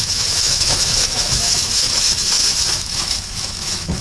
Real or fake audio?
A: fake